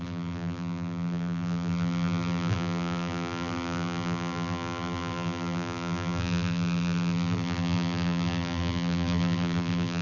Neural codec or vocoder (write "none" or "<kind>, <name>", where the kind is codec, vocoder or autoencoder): vocoder, BigVGAN v2